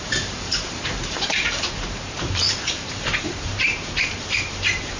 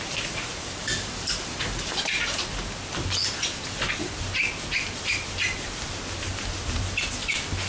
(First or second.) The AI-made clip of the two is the first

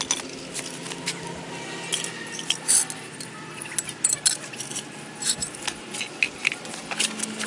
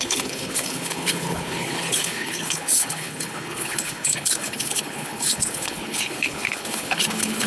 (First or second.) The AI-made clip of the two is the second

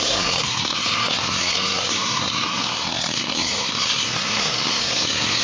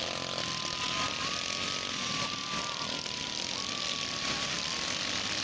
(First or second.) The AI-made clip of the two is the first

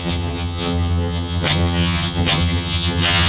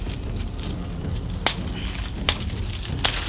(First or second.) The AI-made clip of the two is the first